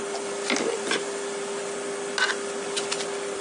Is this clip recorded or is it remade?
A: recorded